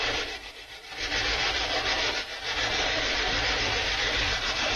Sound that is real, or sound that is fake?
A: fake